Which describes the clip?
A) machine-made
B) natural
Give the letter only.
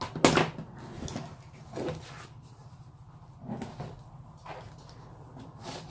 B